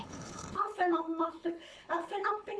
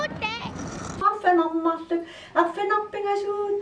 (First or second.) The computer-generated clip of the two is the first